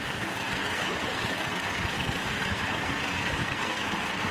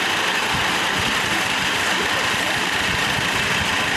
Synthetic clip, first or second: first